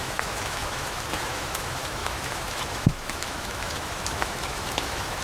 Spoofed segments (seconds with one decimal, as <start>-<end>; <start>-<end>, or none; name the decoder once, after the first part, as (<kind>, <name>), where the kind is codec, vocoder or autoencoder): 0.0-5.2 (autoencoder, DAC-VAE)